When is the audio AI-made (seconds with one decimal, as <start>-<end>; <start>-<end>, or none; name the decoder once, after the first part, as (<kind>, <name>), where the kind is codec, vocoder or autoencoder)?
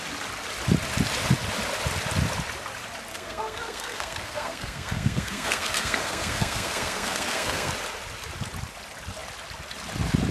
3.1-7.7 (codec, SNAC)